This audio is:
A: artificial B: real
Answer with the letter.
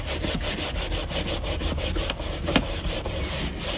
B